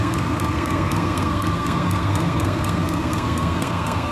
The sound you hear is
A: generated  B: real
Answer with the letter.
A